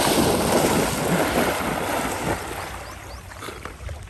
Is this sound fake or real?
real